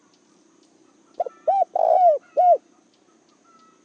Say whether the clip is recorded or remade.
recorded